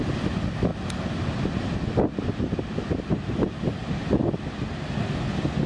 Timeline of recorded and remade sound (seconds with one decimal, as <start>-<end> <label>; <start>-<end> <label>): 0.0-5.7 recorded